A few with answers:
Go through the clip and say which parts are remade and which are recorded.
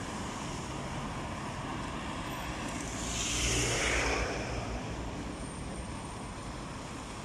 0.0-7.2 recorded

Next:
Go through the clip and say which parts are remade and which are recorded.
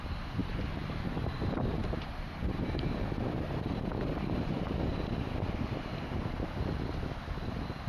0.0-4.9 remade; 4.9-7.9 recorded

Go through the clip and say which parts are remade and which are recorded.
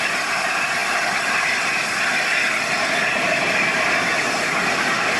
0.0-5.2 recorded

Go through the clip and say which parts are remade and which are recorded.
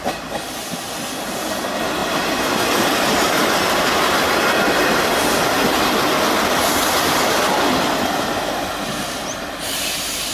0.0-2.0 recorded; 2.0-4.3 remade; 4.3-10.3 recorded